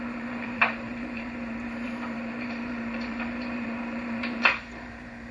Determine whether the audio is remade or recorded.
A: remade